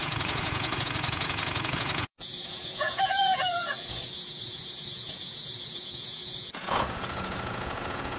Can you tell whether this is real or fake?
fake